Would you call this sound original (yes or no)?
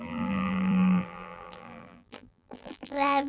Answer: no